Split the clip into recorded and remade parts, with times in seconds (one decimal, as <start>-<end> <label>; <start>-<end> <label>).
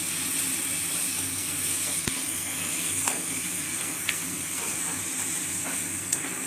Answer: 0.0-1.1 recorded; 1.1-5.0 remade; 5.0-5.5 recorded; 5.5-6.5 remade